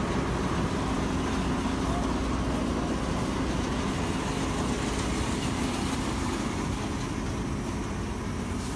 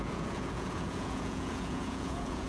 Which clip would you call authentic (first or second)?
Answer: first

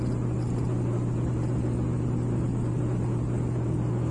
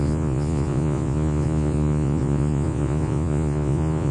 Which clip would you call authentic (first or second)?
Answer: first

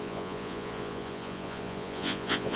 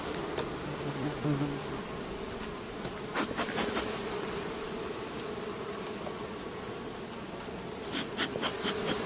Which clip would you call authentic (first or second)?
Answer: second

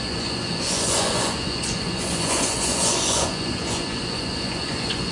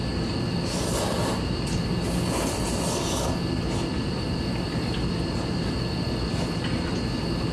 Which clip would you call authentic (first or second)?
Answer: second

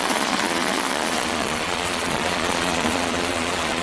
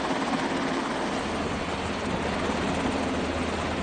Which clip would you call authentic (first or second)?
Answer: second